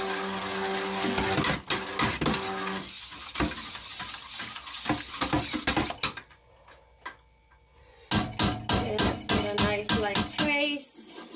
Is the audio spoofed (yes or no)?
no